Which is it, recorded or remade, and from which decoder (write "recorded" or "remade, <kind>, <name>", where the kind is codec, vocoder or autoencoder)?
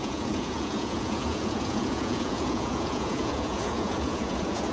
remade, vocoder, Vocos